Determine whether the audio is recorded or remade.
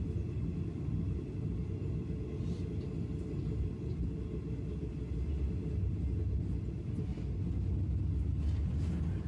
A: recorded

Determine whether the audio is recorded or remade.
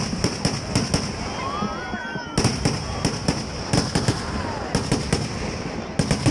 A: recorded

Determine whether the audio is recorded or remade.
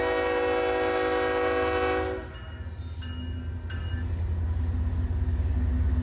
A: recorded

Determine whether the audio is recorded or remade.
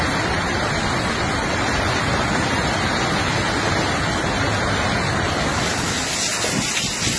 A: recorded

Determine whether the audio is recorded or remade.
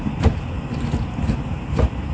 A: recorded